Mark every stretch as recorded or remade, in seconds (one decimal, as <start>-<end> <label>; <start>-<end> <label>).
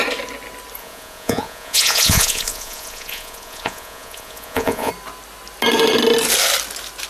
0.0-0.8 recorded; 0.8-4.9 remade; 4.9-7.1 recorded